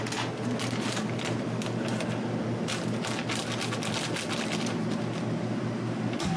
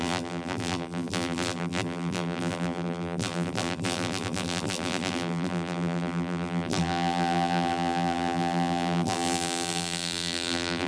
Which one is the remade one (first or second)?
second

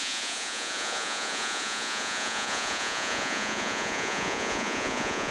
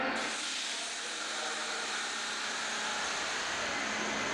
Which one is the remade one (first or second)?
first